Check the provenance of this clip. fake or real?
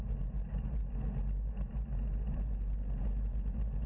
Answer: real